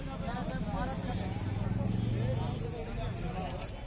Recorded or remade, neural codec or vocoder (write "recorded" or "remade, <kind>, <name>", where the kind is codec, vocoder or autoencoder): recorded